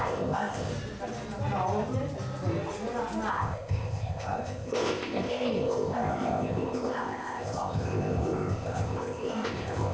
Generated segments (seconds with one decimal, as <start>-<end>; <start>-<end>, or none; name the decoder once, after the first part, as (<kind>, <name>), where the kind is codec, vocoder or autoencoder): 0.0-0.7 (codec, ZipCodec); 3.3-9.9